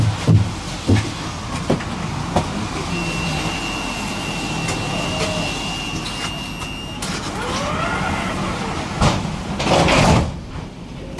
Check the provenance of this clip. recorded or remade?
recorded